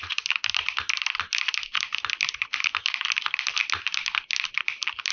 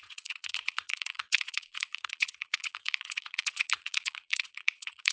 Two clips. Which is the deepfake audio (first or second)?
second